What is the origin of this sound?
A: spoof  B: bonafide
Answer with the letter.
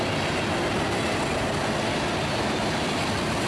B